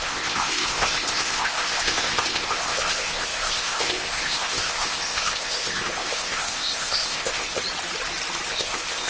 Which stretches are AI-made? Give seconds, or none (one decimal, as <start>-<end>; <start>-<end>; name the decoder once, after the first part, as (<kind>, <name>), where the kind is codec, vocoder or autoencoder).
0.0-7.6 (codec, ZipCodec); 8.5-9.1

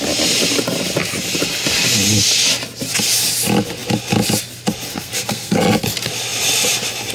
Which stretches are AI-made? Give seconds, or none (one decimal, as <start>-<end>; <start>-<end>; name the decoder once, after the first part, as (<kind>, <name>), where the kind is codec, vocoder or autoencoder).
4.9-5.6 (codec, SNAC)

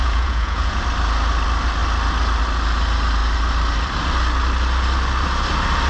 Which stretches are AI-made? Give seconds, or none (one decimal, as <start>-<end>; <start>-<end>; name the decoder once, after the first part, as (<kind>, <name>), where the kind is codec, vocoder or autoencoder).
0.0-0.8 (vocoder, Vocos)